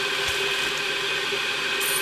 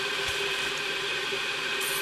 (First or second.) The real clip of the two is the first